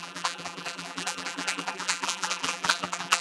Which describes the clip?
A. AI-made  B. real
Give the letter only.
A